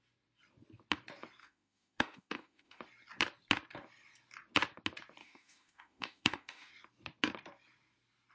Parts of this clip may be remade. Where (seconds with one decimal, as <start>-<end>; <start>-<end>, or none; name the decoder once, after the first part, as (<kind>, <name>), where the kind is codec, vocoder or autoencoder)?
1.4-2.8 (autoencoder, DAC-VAE); 5.2-6.7